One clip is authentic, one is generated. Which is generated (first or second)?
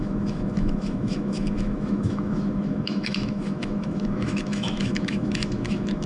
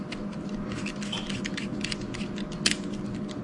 first